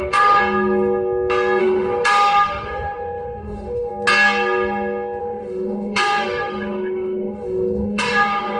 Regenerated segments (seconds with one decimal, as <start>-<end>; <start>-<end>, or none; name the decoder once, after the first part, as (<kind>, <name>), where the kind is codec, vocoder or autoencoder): 0.0-0.4 (autoencoder, DAC-VAE); 1.6-3.9; 5.2-8.6

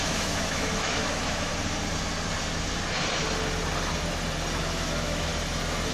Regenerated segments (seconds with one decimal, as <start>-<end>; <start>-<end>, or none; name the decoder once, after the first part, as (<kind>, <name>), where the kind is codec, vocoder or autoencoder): 0.0-1.5 (autoencoder, DAC-VAE); 4.6-5.3